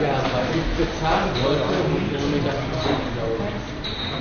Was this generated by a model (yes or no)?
no